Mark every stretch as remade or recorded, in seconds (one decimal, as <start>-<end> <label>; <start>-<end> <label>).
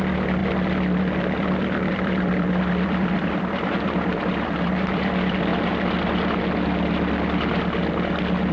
0.0-5.5 remade; 5.5-8.5 recorded